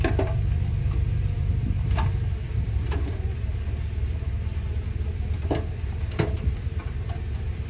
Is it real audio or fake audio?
fake